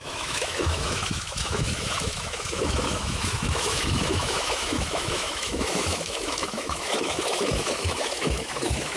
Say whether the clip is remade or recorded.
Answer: remade